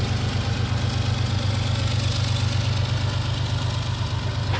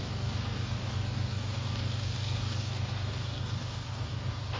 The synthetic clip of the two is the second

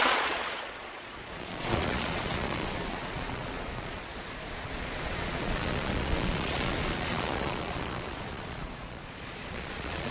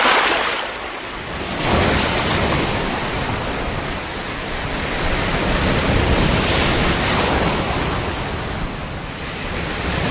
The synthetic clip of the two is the first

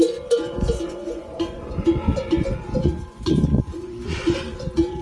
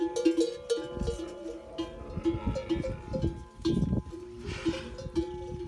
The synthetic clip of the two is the first